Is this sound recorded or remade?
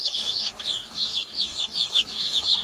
remade